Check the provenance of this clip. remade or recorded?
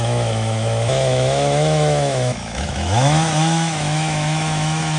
remade